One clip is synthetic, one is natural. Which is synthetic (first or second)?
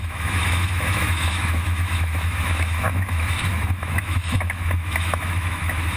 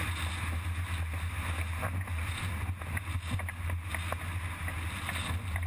first